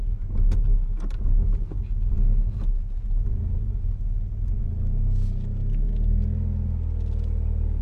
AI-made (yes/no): no